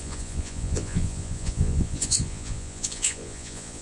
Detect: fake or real fake